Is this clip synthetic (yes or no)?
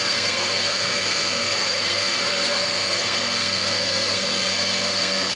yes